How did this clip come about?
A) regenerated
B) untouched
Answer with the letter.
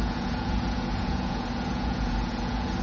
A